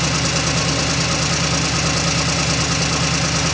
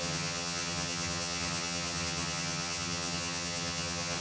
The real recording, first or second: first